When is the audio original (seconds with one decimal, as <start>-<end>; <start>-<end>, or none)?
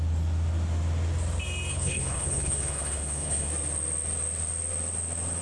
0.0-1.7; 3.5-5.4